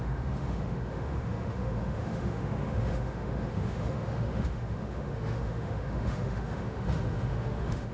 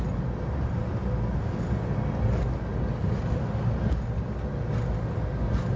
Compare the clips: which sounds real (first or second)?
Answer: second